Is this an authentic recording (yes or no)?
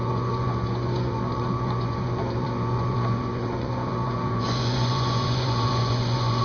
no